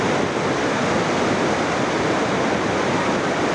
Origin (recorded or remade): remade